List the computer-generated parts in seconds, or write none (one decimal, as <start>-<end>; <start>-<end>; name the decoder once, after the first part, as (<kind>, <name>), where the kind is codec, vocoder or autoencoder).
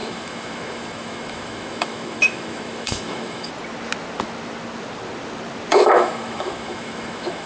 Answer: 0.0-3.5 (autoencoder, DAC-VAE); 5.7-7.5